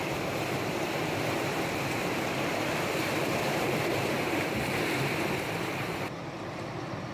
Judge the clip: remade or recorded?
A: remade